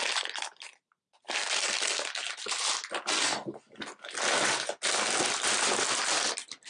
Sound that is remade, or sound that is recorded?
recorded